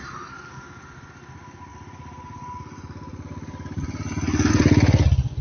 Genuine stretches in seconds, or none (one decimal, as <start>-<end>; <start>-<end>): 0.0-5.4